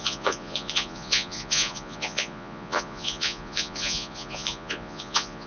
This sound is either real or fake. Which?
fake